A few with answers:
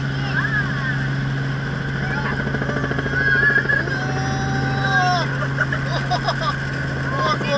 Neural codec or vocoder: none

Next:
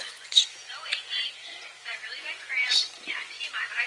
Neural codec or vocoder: vocoder, Vocos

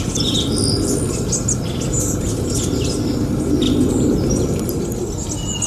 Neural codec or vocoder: none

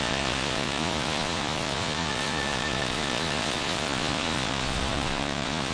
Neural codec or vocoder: vocoder, Vocos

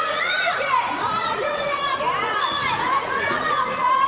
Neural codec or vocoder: vocoder, Vocos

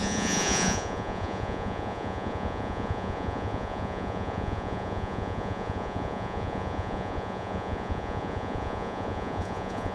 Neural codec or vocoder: vocoder, Vocos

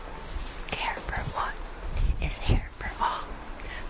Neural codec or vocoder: none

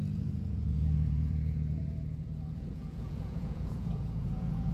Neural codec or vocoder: vocoder, Vocos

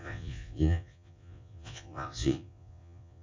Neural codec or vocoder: vocoder, Vocos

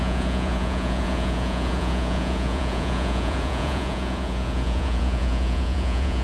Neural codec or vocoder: vocoder, Vocos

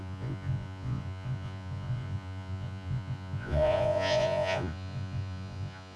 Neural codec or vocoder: vocoder, Vocos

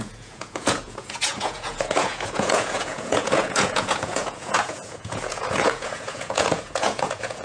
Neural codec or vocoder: vocoder, Vocos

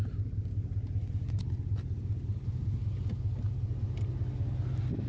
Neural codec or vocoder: none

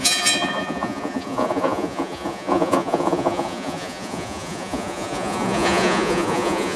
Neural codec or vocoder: vocoder, Vocos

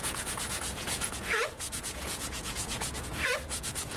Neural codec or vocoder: vocoder, Vocos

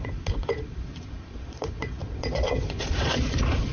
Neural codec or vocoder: vocoder, Vocos